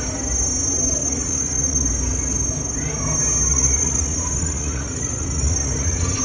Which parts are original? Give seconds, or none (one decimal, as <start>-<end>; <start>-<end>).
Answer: 0.0-1.0; 1.9-3.5